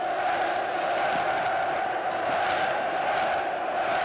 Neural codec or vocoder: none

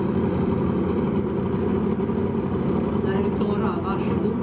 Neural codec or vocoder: none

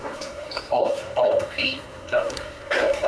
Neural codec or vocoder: codec, SNAC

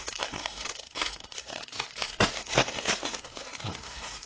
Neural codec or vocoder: codec, SNAC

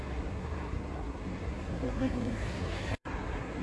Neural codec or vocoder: codec, SNAC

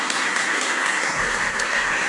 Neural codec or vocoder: codec, SNAC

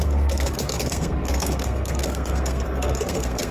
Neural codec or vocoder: codec, SNAC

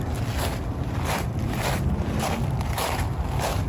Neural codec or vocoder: none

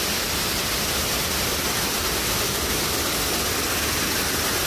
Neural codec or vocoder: none